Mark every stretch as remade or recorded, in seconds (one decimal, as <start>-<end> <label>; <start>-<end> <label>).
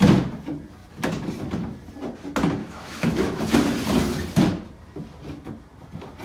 0.0-2.6 recorded; 2.6-3.4 remade; 3.4-6.2 recorded